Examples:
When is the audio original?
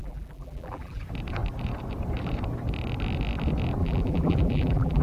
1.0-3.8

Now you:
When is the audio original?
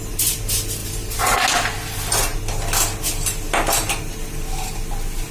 0.0-5.3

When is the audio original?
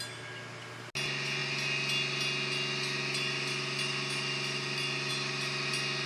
0.0-6.1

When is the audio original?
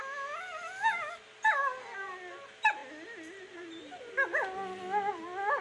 0.0-5.6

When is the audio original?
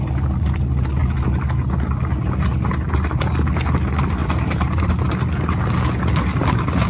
0.0-4.2; 4.9-6.9